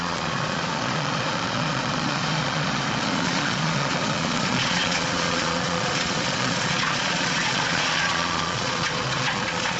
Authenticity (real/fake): fake